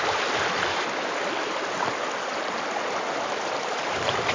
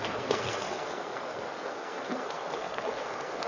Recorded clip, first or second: first